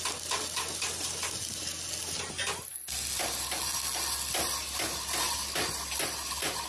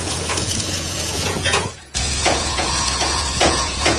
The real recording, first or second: first